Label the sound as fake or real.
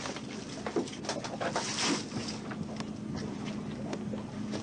real